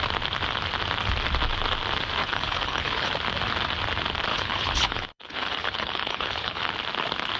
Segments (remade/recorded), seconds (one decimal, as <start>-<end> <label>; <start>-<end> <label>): 0.0-2.2 recorded; 2.2-3.1 remade; 3.1-4.3 recorded; 4.3-6.7 remade; 6.7-7.4 recorded